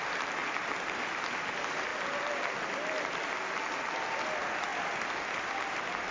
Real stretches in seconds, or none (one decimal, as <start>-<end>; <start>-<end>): 0.0-6.1